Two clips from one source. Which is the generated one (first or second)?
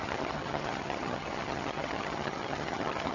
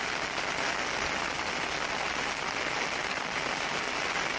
first